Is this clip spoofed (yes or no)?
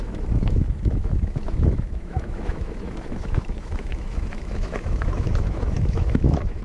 yes